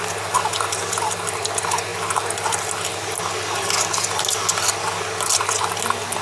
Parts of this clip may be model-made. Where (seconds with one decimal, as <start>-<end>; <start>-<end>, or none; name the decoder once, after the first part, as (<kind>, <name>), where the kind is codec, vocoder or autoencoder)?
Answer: none

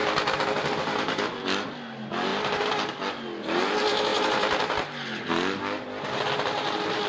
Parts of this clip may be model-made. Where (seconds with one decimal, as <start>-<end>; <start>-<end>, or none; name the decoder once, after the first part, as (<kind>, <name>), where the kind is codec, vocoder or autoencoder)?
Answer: none

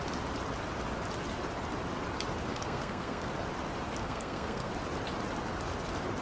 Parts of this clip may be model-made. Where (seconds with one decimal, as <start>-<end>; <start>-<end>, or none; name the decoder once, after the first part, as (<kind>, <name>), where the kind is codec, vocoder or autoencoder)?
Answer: 2.5-3.3 (codec, SNAC); 4.0-4.7

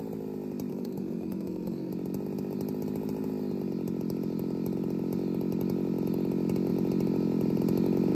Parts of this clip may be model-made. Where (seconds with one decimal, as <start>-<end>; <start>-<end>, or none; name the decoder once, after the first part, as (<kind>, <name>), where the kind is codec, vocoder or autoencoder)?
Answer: 0.7-1.9 (codec, SNAC)